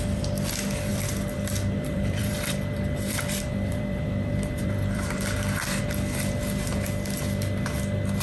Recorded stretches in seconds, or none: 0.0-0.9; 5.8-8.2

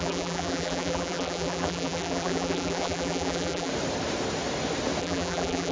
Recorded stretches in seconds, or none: 3.7-5.0

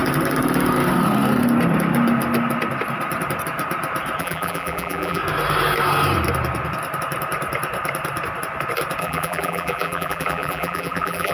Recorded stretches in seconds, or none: 0.0-4.2; 5.2-9.0

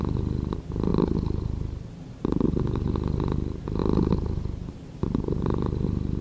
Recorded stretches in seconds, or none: 0.0-6.2